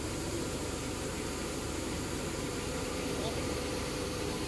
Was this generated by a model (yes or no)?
yes